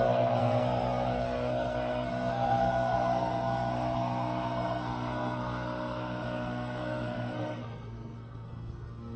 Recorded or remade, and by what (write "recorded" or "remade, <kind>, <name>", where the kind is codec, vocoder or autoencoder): remade, codec, SNAC